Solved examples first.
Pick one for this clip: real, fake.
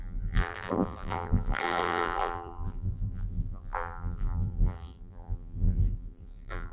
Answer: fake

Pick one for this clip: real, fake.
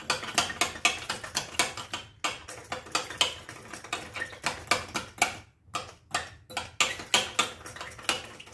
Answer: real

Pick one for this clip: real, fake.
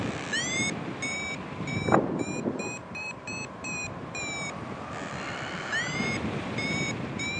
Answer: fake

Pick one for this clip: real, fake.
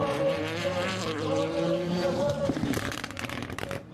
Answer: fake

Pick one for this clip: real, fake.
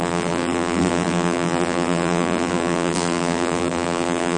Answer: fake